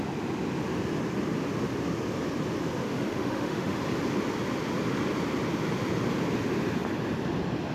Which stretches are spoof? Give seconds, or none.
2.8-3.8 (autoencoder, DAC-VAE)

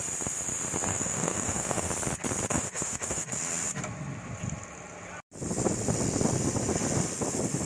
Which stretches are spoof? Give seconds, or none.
0.9-1.9 (autoencoder, DAC-VAE); 2.5-3.3

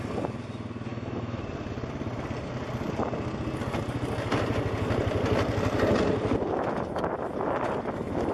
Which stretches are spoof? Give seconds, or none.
0.9-1.4 (autoencoder, DAC-VAE)